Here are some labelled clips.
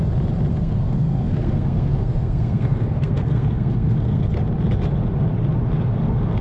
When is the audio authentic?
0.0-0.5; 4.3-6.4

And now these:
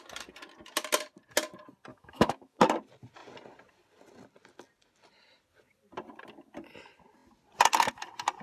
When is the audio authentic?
0.0-1.9; 2.6-8.4

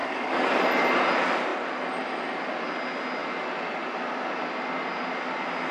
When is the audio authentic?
0.6-5.7

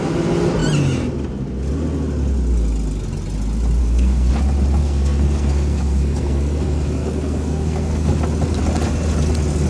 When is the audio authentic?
0.0-3.8; 4.3-4.8; 8.2-9.7